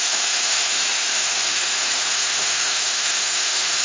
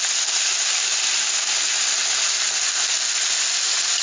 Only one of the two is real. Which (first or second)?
second